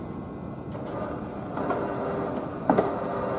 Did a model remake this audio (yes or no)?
no